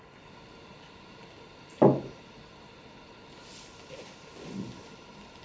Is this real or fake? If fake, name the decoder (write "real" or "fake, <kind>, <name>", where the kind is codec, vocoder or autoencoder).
real